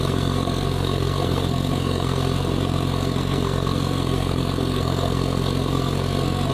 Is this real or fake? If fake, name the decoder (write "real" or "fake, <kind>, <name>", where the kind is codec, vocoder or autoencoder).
fake, codec, SNAC